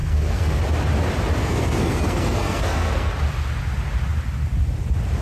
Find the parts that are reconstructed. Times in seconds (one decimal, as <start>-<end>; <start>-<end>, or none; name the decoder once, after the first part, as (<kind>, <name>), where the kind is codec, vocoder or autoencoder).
0.0-0.6 (codec, SNAC); 1.4-3.1